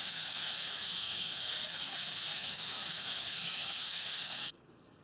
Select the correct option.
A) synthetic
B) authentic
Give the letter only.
A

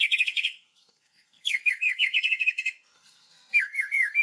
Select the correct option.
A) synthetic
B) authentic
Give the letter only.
A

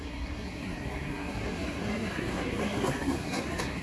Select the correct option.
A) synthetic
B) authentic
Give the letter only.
A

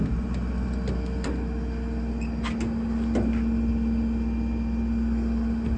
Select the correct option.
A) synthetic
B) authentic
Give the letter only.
B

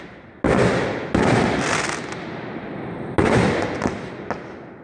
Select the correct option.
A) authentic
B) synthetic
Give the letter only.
A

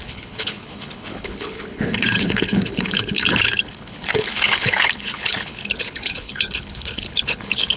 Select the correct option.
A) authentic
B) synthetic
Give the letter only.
B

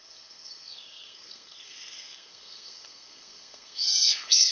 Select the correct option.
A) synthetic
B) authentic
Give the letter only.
A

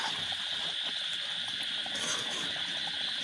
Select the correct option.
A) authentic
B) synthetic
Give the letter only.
A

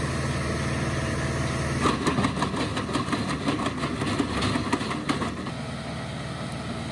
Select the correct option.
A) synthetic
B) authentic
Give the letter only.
B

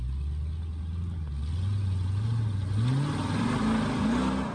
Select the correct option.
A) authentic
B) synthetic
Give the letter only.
A